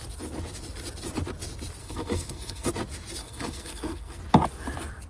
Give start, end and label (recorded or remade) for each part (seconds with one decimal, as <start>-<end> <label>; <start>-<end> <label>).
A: 0.0-1.8 recorded; 1.8-2.7 remade; 2.7-3.2 recorded; 3.2-4.2 remade; 4.2-5.1 recorded